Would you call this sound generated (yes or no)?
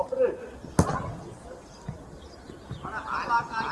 no